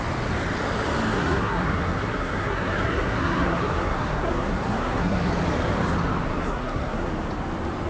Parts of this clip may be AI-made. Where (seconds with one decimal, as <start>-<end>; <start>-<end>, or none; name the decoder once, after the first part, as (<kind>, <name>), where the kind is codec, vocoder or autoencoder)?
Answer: 1.1-5.3 (codec, SNAC); 6.3-7.1